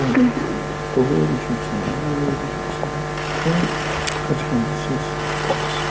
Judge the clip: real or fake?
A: real